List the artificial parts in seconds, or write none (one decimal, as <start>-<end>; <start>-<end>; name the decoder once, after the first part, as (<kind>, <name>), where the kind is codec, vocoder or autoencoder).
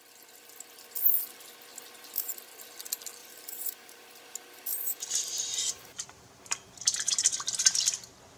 3.2-4.2 (vocoder, BigVGAN v2); 4.7-7.1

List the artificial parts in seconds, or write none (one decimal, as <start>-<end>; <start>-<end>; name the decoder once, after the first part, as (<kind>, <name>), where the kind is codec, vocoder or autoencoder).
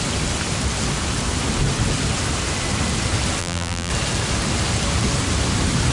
3.4-3.9 (vocoder, BigVGAN v2)